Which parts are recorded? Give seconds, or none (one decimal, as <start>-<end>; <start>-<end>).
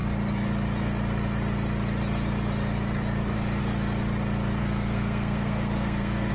0.0-4.6